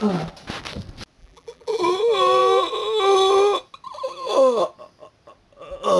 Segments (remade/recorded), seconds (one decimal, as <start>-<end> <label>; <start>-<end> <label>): 0.0-1.2 recorded; 1.2-1.8 remade; 1.8-6.0 recorded